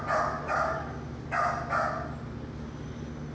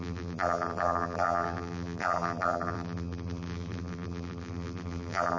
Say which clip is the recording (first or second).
first